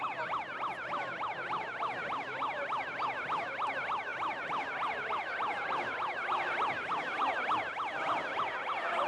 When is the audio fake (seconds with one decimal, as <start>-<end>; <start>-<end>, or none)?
none